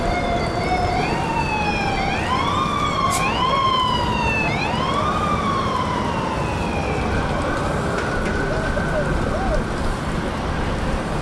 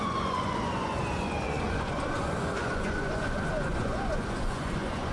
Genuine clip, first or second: first